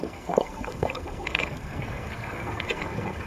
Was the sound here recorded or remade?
remade